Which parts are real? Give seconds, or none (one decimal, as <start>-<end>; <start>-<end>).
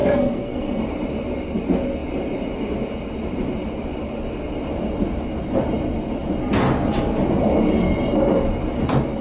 0.8-9.2